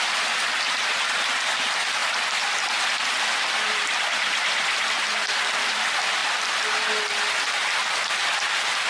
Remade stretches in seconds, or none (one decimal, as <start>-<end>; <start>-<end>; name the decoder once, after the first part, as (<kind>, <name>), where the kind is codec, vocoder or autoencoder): none